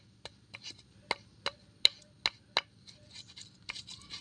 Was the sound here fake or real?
real